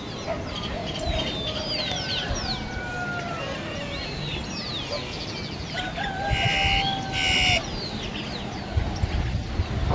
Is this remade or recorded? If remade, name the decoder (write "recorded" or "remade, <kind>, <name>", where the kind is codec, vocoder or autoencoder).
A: recorded